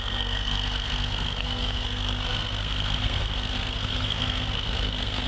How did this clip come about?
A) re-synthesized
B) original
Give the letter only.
A